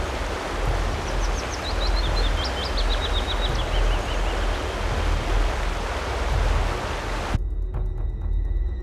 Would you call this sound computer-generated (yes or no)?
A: no